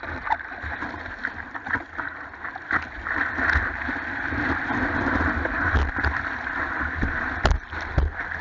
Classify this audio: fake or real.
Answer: real